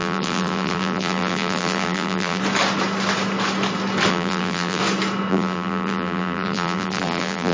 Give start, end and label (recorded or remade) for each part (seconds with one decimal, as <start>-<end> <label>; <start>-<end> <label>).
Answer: 0.0-2.4 remade; 2.4-4.1 recorded; 4.1-4.8 remade; 4.8-5.3 recorded; 5.3-7.5 remade